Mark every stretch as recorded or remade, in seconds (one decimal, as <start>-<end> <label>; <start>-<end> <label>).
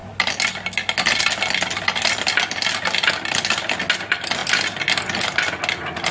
0.0-6.1 recorded